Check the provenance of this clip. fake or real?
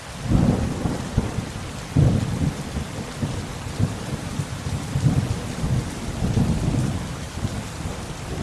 fake